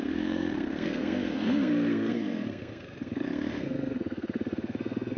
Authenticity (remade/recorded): remade